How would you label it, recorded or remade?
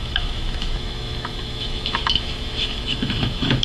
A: remade